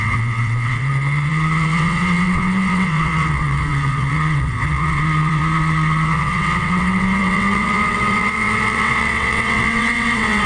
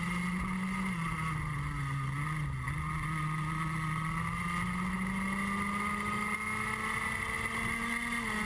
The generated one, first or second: first